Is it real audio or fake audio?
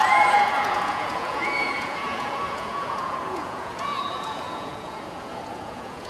fake